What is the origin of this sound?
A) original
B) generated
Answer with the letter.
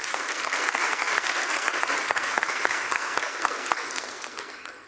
B